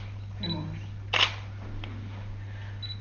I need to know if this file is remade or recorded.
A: recorded